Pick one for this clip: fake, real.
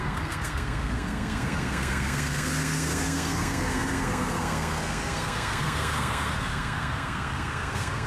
fake